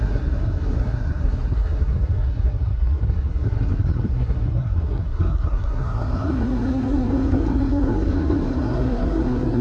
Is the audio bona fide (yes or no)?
no